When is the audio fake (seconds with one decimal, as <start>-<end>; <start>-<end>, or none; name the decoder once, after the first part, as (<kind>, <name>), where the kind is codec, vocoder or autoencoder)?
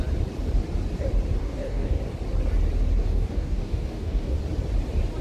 1.4-2.0 (codec, DAC); 3.0-4.4